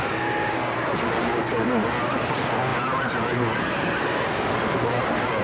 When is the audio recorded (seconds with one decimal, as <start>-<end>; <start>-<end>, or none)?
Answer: 0.0-5.4